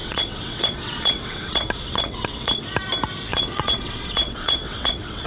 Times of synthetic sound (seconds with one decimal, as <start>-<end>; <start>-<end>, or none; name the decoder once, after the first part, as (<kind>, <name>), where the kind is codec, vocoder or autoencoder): 0.0-2.6 (vocoder, WaveNeXt); 3.3-5.3